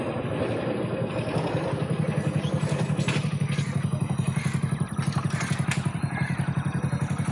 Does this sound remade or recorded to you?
remade